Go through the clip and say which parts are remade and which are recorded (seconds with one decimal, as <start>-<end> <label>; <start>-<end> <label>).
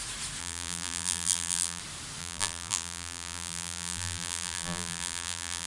0.0-0.4 recorded; 0.4-1.8 remade; 1.8-2.2 recorded; 2.2-5.7 remade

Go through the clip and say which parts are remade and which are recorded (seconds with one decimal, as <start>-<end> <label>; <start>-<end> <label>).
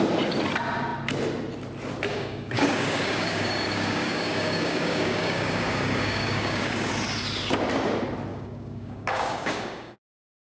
0.0-2.1 recorded; 2.1-6.9 remade; 6.9-8.3 recorded; 8.3-10.6 remade